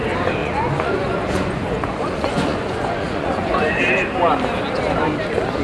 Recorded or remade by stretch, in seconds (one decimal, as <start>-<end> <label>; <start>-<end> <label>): 0.0-0.4 recorded; 0.4-3.8 remade; 3.8-5.6 recorded